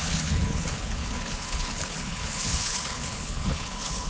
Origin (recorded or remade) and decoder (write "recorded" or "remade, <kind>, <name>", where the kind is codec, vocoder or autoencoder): remade, codec, HILCodec